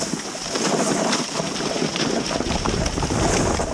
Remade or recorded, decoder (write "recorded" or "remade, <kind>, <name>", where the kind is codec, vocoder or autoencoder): recorded